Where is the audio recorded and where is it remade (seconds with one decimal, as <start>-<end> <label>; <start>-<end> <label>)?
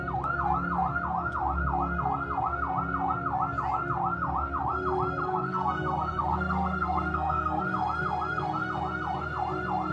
0.0-5.2 recorded; 5.2-7.6 remade; 7.6-9.9 recorded